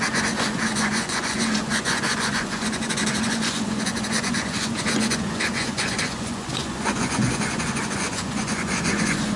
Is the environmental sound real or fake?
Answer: fake